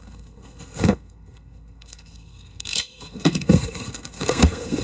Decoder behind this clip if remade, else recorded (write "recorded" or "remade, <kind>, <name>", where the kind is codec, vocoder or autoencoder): remade, codec, SNAC